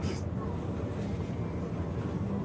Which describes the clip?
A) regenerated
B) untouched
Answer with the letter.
B